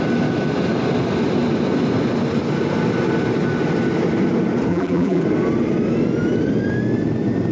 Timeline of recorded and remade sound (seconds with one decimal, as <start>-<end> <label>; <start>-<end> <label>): 0.0-4.7 recorded; 4.7-5.2 remade; 5.2-7.5 recorded